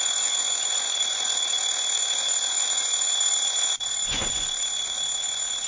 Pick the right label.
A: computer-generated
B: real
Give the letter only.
A